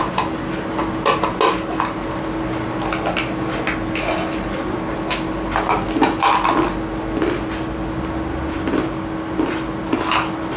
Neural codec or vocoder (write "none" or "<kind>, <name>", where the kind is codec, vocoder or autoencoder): none